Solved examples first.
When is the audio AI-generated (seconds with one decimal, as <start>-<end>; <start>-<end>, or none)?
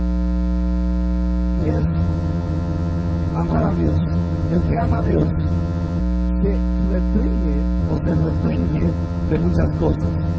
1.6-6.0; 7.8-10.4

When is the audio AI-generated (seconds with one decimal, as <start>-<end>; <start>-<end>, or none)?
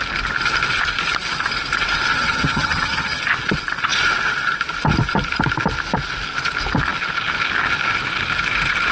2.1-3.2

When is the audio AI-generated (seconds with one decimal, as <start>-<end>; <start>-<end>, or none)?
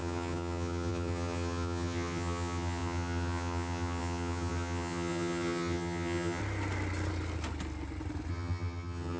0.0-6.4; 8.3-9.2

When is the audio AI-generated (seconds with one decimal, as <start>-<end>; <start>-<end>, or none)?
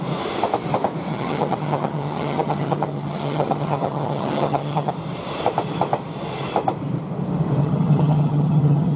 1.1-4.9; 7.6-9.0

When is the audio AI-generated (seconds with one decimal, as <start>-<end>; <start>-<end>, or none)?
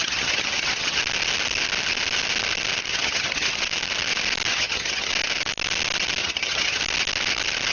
0.0-1.0; 2.9-3.6; 4.5-5.1; 6.2-6.8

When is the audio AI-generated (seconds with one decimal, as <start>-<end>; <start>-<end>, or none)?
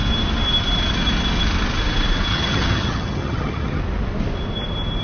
2.3-3.8